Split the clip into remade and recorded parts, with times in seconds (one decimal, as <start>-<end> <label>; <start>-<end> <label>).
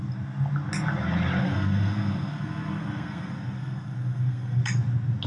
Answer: 0.0-1.4 recorded; 1.4-4.6 remade; 4.6-5.3 recorded